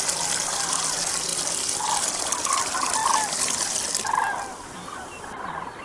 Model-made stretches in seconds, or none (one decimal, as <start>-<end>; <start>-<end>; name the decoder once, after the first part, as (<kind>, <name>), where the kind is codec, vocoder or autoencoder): none